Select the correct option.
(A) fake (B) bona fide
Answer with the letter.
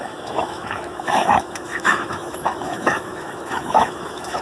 A